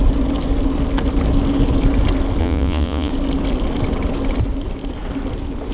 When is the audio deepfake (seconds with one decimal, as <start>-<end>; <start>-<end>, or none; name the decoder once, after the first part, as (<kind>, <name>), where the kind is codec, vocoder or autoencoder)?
2.4-3.1 (vocoder, Vocos)